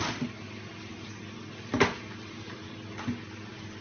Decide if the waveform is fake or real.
real